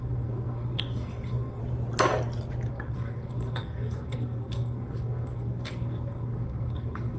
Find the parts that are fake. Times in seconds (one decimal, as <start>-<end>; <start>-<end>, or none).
0.0-1.6; 2.7-7.2